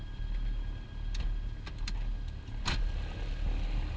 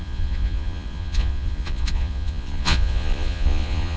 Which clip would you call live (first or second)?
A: first